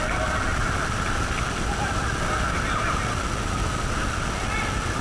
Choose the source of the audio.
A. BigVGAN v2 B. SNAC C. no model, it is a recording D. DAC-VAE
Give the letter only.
C